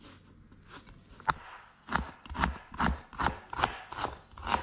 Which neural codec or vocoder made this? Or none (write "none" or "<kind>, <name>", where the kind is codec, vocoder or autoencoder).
none